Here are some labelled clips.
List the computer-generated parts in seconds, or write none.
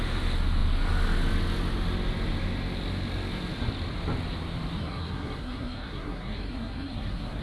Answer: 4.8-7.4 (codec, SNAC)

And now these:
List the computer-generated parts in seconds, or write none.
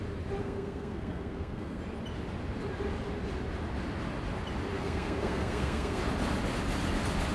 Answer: 0.4-1.8 (codec, SNAC); 4.7-6.0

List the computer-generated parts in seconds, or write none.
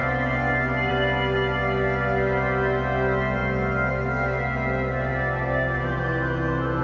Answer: none